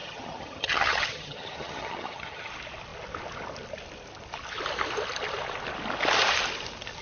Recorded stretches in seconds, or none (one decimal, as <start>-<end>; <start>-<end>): 2.5-7.0